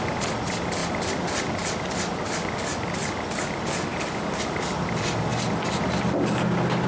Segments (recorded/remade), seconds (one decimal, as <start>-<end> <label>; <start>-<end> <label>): 0.0-6.9 recorded